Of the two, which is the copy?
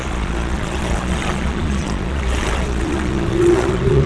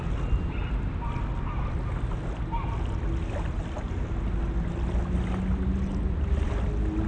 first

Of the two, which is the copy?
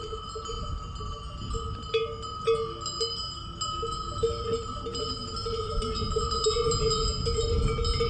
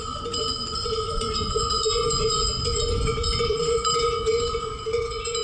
second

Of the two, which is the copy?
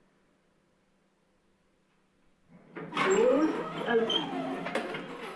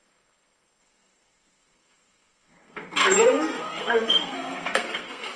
second